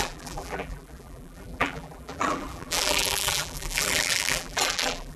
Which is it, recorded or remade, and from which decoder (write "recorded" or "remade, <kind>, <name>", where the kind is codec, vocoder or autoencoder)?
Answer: remade, vocoder, BigVGAN v2